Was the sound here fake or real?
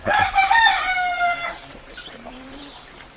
fake